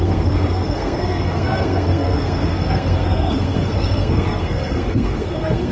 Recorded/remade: remade